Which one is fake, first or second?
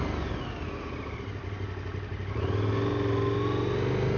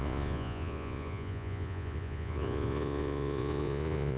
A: second